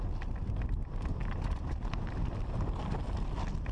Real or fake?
real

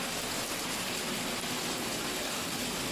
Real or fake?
real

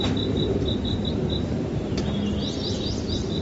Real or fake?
real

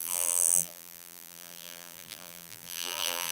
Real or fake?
fake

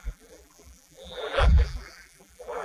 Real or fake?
fake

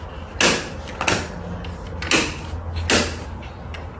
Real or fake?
real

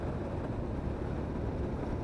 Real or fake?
real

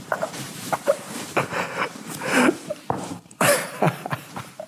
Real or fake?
fake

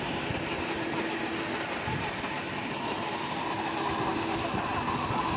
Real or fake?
fake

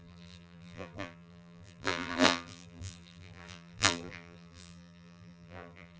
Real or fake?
fake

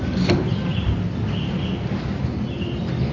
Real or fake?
real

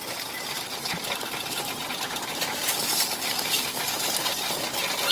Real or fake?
fake